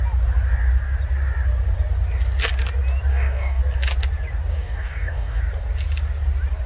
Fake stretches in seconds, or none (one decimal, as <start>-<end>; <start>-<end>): 3.1-3.6; 4.5-5.4